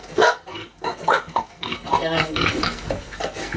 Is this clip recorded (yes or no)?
no